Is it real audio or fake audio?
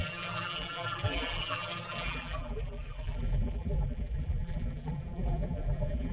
fake